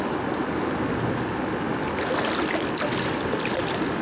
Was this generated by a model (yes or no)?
no